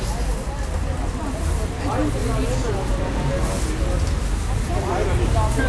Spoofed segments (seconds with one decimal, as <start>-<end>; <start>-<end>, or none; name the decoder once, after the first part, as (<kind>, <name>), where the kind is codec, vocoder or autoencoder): none